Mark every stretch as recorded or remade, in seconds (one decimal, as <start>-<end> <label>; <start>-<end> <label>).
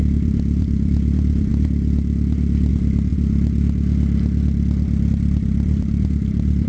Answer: 0.0-1.5 remade; 1.5-2.7 recorded; 2.7-3.1 remade; 3.1-5.1 recorded; 5.1-6.7 remade